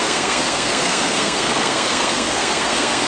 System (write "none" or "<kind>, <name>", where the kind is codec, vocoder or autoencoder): codec, SNAC